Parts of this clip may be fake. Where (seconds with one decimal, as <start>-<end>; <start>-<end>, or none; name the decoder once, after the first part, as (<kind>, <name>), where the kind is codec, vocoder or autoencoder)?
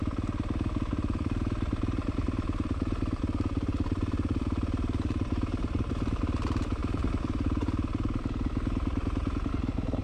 0.0-10.0 (vocoder, BigVGAN v2)